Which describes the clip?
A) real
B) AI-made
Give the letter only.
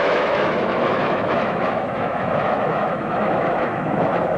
B